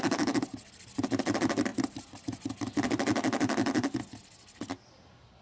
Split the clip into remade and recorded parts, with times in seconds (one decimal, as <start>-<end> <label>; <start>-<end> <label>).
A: 0.0-5.4 recorded